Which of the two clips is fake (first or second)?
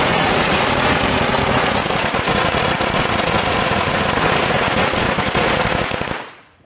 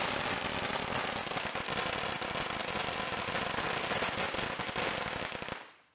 first